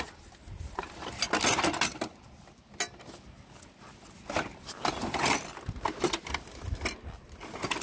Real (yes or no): yes